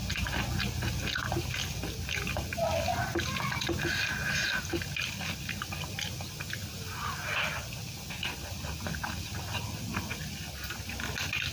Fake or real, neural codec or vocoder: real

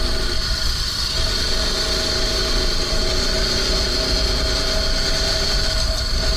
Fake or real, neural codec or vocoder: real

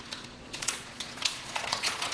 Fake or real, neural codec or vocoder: fake, vocoder, Vocos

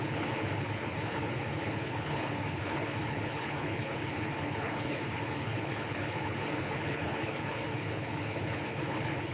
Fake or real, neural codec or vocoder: fake, codec, HILCodec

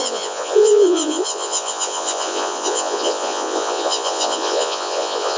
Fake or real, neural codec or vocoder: fake, vocoder, Vocos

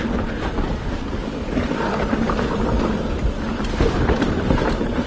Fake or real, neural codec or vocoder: real